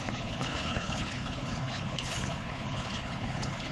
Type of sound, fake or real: fake